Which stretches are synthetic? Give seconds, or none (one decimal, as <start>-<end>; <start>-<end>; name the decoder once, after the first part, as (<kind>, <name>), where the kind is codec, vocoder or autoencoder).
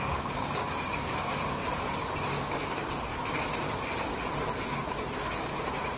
0.0-1.6 (codec, DAC); 2.3-3.1; 4.7-6.0